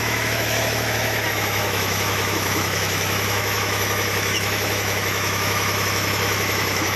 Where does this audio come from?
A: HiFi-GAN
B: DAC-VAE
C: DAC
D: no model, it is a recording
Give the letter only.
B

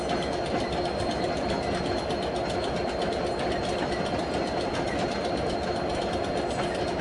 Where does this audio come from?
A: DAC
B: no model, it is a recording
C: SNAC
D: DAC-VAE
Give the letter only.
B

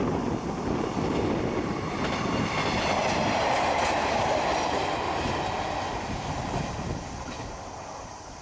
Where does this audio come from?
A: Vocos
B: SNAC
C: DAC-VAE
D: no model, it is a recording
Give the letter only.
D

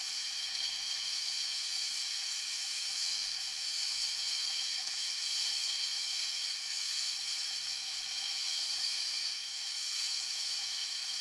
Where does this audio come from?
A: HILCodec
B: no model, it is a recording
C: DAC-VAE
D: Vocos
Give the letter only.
C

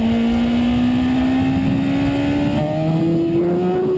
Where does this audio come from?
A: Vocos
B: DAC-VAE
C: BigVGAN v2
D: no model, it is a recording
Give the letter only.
D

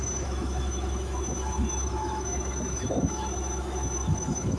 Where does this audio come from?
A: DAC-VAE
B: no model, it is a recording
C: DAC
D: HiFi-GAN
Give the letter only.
A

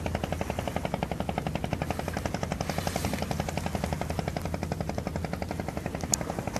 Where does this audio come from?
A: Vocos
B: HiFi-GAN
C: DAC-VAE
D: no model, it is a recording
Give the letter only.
D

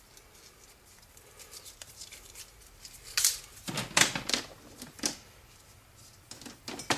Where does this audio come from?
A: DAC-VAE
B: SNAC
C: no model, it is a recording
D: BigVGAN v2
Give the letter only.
C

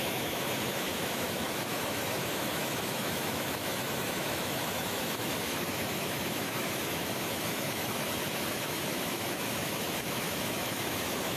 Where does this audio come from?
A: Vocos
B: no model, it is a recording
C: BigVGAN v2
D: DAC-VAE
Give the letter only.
D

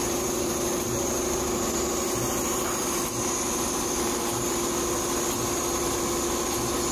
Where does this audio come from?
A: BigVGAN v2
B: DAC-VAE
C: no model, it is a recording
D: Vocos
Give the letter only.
C